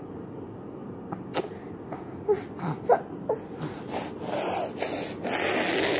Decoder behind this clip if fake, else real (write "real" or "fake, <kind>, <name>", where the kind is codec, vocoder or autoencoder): real